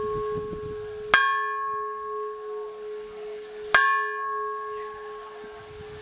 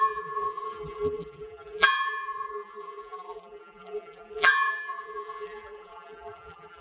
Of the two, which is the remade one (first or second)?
second